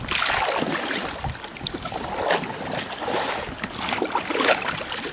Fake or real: real